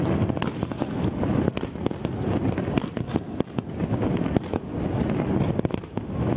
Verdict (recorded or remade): recorded